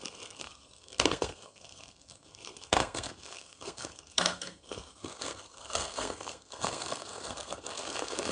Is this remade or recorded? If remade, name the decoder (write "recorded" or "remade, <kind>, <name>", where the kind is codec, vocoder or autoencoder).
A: remade, codec, SNAC